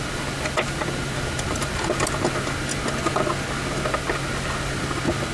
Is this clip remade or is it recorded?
recorded